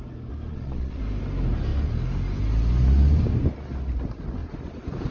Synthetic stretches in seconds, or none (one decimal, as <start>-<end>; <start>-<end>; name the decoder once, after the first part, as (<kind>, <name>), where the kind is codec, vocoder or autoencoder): 0.5-1.0 (vocoder, Vocos)